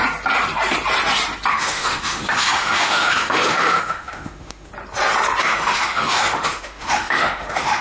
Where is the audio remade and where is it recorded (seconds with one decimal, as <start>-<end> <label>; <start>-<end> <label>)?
0.0-1.5 recorded; 1.5-4.7 remade; 4.7-5.4 recorded; 5.4-7.8 remade